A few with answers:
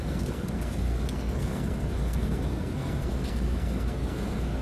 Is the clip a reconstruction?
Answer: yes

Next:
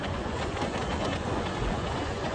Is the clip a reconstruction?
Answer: yes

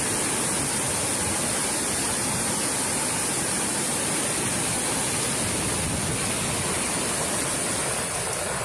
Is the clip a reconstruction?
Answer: no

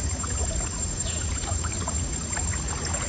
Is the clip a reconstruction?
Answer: yes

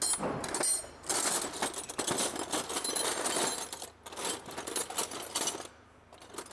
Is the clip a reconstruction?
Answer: no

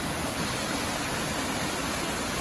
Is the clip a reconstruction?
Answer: no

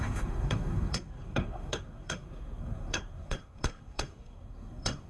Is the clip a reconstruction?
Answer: yes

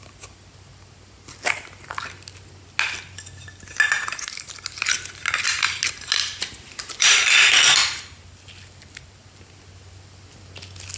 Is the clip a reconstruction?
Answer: no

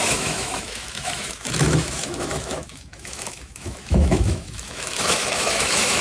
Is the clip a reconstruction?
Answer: yes